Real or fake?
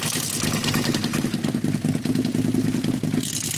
real